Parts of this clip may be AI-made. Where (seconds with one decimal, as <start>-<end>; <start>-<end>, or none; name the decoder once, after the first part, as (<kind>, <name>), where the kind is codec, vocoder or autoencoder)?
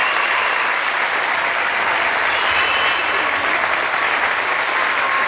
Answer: 0.0-1.4 (vocoder, BigVGAN v2)